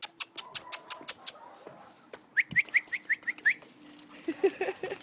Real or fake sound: real